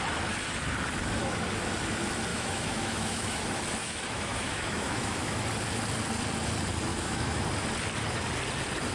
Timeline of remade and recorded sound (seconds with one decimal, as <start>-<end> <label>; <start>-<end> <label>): 0.0-2.3 recorded; 2.3-3.4 remade; 3.4-3.8 recorded; 3.8-5.4 remade; 5.4-6.9 recorded; 6.9-7.4 remade; 7.4-8.9 recorded